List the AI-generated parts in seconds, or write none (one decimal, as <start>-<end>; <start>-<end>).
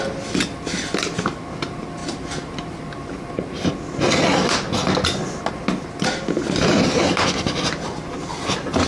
none